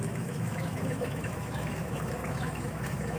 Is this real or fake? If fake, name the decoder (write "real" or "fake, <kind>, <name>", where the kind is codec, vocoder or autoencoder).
fake, autoencoder, DAC-VAE